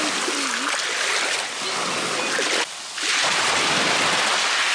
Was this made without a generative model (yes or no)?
yes